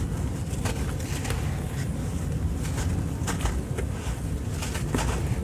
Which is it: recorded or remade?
recorded